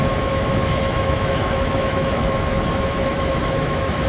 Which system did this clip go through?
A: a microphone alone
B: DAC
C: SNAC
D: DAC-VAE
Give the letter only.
D